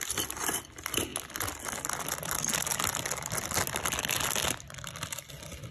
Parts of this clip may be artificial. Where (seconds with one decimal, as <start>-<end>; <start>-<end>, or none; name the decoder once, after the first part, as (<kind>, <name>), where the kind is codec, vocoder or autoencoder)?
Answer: 0.0-1.1 (vocoder, BigVGAN v2); 4.5-5.7